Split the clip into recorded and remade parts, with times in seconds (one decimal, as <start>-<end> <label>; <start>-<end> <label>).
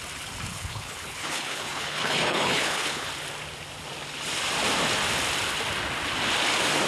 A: 0.0-0.5 recorded; 0.5-3.1 remade; 3.1-6.9 recorded